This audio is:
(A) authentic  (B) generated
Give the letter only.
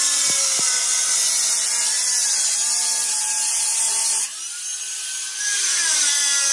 A